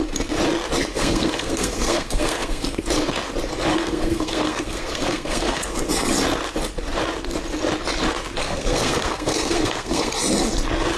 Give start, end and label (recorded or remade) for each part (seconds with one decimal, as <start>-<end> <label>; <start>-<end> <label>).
0.0-0.9 recorded; 0.9-2.8 remade; 2.8-3.7 recorded; 3.7-5.9 remade; 5.9-8.4 recorded; 8.4-10.1 remade; 10.1-11.0 recorded